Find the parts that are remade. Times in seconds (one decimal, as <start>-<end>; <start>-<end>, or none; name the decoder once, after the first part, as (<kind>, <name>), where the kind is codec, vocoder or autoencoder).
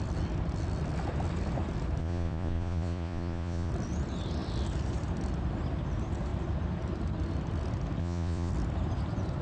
2.0-3.7 (vocoder, Vocos); 8.0-8.5